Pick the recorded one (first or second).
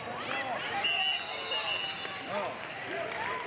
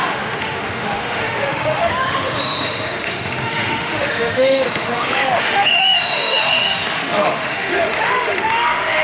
first